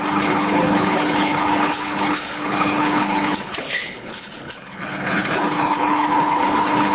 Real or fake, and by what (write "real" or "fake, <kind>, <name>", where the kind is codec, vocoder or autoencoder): fake, codec, HILCodec